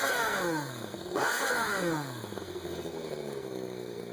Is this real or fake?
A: fake